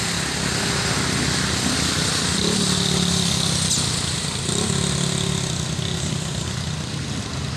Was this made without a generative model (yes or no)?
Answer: yes